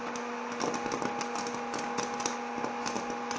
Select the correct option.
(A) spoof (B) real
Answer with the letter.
B